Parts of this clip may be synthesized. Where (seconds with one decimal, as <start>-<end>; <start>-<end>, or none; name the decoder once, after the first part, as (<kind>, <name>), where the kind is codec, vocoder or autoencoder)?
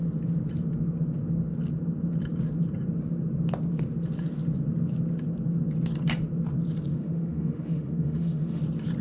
6.9-8.6 (autoencoder, DAC-VAE)